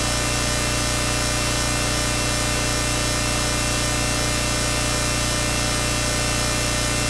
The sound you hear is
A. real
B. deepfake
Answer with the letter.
A